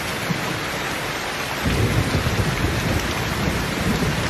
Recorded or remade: recorded